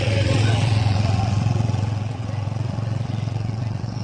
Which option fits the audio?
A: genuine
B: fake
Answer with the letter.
B